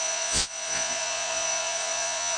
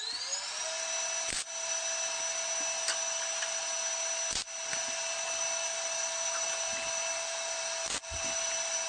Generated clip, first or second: first